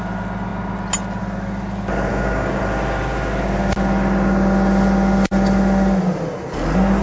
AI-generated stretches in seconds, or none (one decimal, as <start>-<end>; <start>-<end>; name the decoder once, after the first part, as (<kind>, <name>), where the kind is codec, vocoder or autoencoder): 2.1-2.6 (codec, DAC)